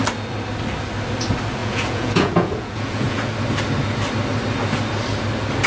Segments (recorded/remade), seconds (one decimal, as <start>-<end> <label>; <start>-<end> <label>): 0.0-1.6 recorded; 1.6-3.3 remade; 3.3-5.7 recorded